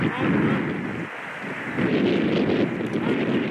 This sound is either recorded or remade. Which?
recorded